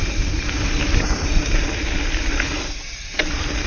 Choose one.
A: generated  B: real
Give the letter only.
B